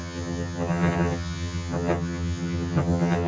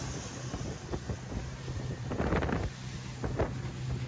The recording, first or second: second